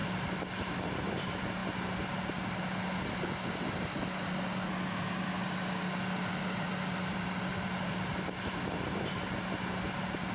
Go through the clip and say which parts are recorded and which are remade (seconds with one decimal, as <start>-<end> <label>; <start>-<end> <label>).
0.0-10.3 recorded